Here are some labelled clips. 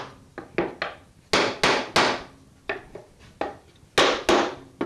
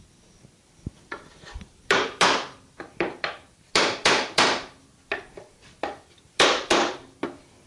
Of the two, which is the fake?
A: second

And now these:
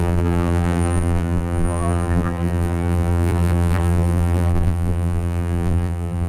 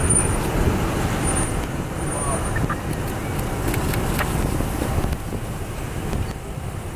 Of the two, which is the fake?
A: first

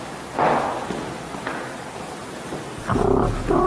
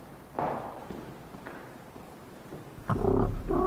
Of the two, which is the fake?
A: second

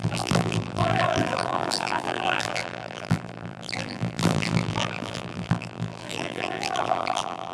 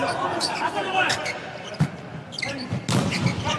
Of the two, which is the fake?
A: first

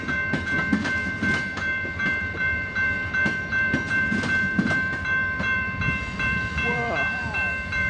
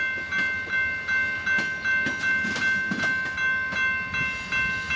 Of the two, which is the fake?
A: first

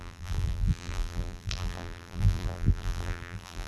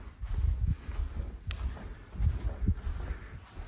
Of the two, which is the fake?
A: first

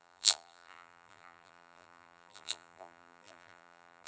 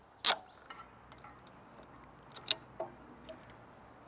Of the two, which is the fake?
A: first